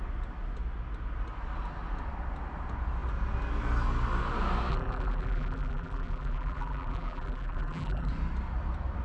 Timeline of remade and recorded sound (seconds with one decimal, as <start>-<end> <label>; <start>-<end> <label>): 0.0-4.7 recorded; 4.7-8.1 remade; 8.1-9.0 recorded